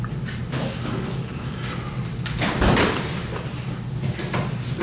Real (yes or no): yes